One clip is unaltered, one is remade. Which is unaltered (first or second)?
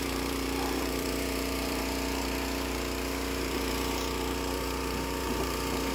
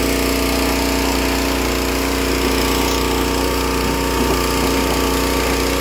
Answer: second